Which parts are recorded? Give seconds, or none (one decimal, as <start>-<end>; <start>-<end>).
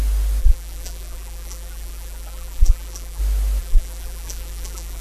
0.0-0.4; 3.2-3.6